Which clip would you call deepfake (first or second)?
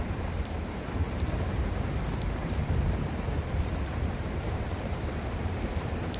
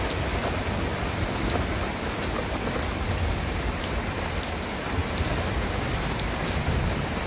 first